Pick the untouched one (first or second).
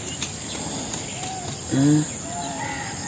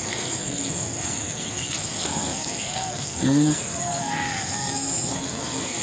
first